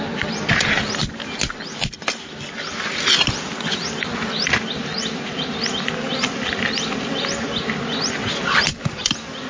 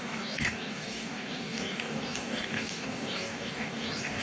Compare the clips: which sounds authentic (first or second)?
first